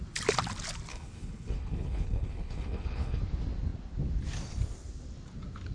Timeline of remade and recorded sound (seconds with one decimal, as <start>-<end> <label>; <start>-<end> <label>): 0.0-0.9 recorded; 0.9-3.2 remade; 3.2-5.7 recorded